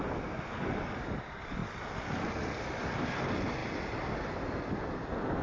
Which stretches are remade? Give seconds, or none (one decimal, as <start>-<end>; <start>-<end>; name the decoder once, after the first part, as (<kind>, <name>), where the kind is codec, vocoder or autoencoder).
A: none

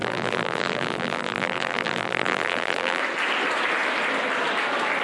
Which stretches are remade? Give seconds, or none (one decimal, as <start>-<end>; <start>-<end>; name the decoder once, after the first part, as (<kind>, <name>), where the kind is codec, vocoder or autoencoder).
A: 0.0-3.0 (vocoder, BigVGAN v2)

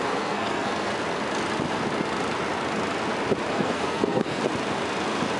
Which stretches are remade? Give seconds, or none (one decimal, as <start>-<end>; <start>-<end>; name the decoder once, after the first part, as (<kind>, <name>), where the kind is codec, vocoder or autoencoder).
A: 0.0-0.9 (codec, SNAC); 3.5-4.4